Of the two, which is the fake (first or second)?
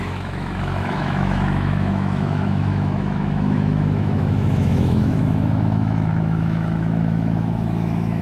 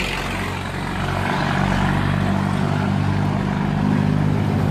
first